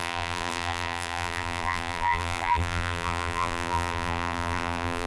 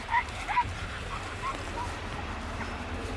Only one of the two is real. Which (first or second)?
second